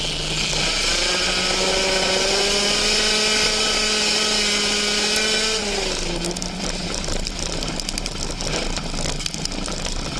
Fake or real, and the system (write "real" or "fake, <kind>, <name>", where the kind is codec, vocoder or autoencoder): real